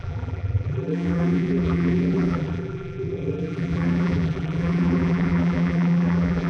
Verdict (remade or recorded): remade